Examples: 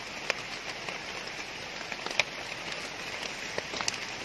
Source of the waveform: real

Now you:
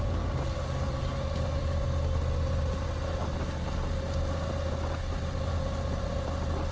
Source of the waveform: real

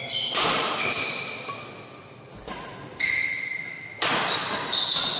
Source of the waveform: real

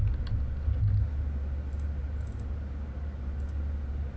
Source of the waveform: real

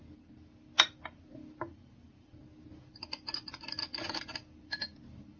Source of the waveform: real